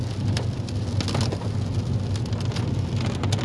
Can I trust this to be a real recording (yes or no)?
yes